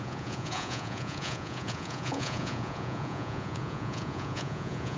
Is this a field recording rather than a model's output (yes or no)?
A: no